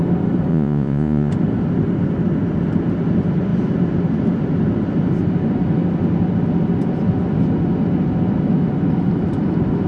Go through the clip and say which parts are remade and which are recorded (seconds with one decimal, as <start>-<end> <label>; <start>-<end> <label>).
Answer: 0.0-0.5 recorded; 0.5-1.3 remade; 1.3-9.9 recorded